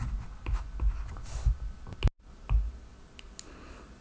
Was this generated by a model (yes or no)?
no